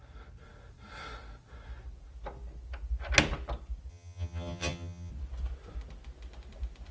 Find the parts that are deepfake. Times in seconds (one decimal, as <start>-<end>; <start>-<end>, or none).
3.9-5.1